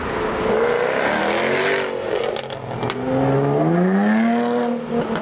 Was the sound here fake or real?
real